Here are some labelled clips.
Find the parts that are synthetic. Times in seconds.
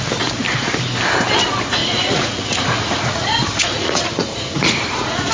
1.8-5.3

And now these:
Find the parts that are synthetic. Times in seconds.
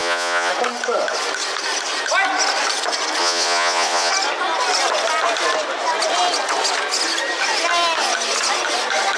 0.0-0.5; 3.2-4.1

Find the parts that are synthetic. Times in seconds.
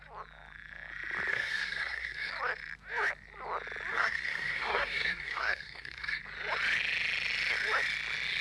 1.3-2.3; 3.9-6.2